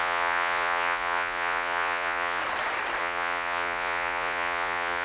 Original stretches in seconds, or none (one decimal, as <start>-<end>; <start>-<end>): 2.4-3.0

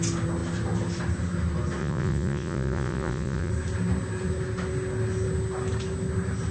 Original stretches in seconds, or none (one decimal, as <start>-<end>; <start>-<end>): 0.0-1.8; 3.5-6.5

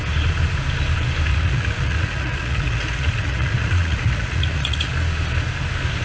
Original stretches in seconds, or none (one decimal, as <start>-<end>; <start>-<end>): 0.0-1.3; 4.9-6.0

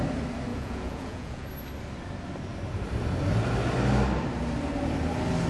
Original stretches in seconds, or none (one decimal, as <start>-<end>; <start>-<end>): 0.0-0.5; 1.5-5.5

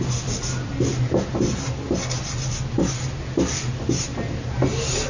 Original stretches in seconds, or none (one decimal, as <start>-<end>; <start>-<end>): 0.0-5.1

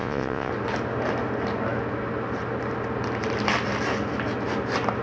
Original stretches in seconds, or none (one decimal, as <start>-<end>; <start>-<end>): 0.5-5.0